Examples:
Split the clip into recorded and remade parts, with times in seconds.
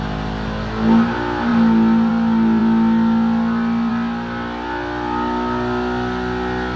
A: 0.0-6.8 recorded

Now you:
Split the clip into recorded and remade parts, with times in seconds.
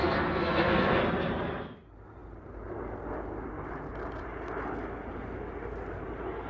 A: 0.0-1.0 remade; 1.0-6.5 recorded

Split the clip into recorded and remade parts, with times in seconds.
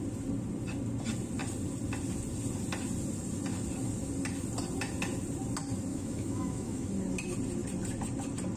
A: 0.0-5.9 recorded; 5.9-6.9 remade; 6.9-8.6 recorded